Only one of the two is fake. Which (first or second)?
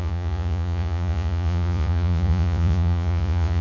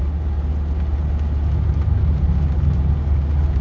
first